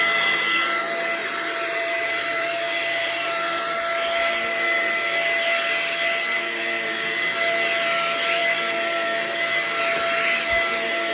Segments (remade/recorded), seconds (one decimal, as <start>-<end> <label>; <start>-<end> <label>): 0.0-1.2 recorded; 1.2-3.6 remade; 3.6-11.1 recorded